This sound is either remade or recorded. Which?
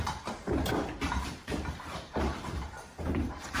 remade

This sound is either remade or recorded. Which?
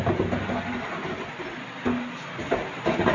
recorded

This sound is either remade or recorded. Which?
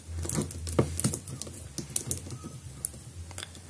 recorded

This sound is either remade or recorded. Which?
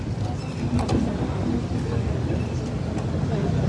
recorded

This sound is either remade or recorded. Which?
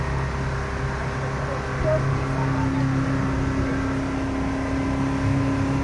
recorded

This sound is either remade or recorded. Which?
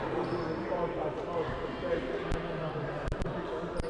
recorded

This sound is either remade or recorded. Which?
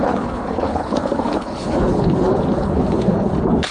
remade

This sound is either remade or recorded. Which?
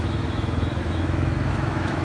remade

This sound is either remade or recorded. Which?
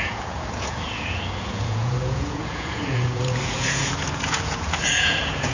remade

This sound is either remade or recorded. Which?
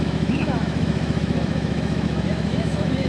remade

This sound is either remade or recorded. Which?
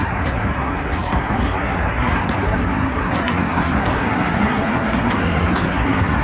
remade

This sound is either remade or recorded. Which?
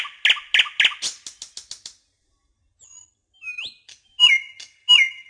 recorded